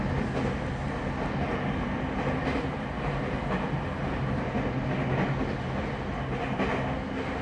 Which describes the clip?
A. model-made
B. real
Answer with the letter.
B